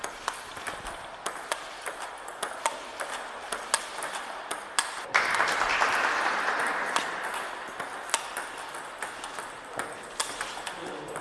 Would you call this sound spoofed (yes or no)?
no